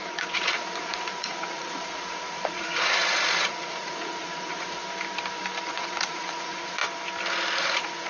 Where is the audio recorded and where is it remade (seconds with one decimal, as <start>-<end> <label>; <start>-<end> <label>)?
0.0-4.8 remade; 4.8-5.7 recorded; 5.7-6.8 remade; 6.8-7.6 recorded; 7.6-8.1 remade